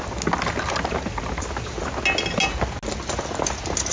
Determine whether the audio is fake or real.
real